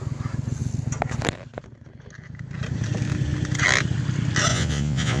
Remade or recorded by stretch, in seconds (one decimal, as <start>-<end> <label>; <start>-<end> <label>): 0.0-4.5 recorded; 4.5-5.2 remade